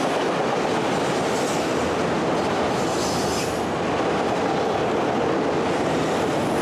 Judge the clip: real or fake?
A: real